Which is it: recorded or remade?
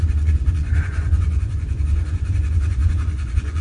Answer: remade